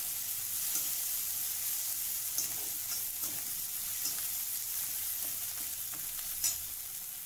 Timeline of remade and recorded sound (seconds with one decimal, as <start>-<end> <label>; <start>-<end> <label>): 0.0-7.3 recorded